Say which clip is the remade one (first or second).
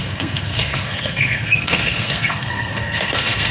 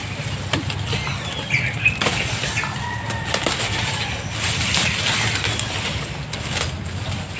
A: first